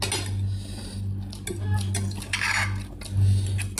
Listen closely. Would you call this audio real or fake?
real